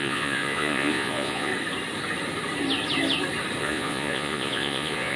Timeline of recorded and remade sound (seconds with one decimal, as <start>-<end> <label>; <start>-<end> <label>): 0.0-1.5 remade; 1.5-3.6 recorded; 3.6-5.2 remade